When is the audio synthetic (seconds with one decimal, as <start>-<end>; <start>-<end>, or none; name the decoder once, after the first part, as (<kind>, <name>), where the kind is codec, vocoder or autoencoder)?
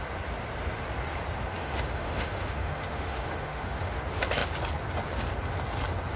1.6-4.0 (autoencoder, DAC-VAE)